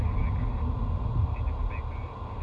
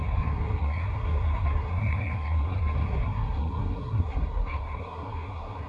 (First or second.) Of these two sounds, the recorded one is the first